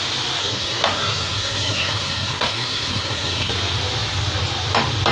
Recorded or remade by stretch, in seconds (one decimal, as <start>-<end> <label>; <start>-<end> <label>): 0.0-0.4 recorded; 0.4-3.5 remade; 3.5-5.1 recorded